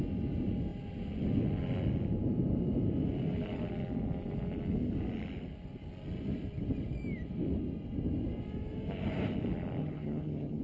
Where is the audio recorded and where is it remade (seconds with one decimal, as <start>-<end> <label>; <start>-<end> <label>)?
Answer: 0.0-9.8 recorded; 9.8-10.6 remade